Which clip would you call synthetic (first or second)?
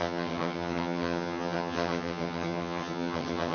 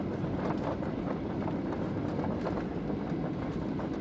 first